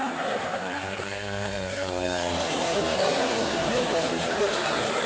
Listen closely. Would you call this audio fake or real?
fake